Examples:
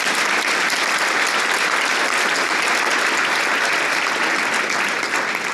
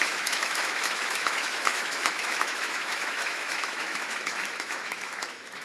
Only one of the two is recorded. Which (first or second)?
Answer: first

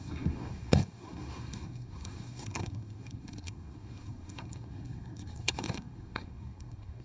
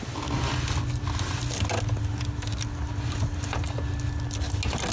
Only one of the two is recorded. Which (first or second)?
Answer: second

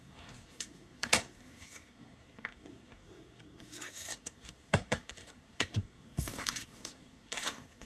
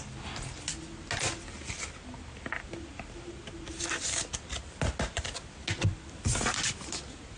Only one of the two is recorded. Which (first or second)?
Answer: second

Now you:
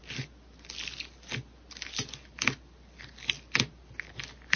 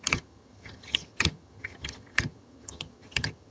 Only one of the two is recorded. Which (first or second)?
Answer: first